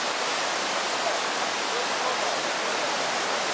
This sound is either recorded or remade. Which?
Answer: recorded